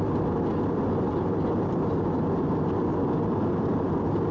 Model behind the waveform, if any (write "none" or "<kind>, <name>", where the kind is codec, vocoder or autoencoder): none